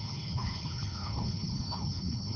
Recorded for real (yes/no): no